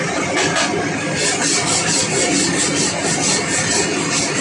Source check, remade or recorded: recorded